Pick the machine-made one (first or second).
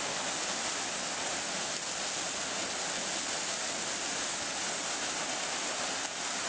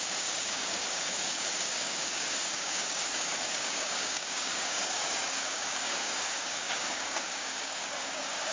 second